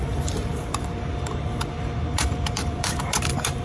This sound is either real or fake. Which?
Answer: fake